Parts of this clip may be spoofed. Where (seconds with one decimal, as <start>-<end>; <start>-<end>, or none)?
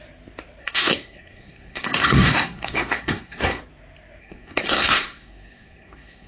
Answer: 0.6-3.6; 4.2-6.3